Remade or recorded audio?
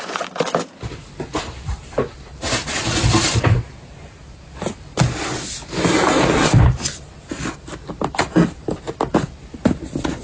recorded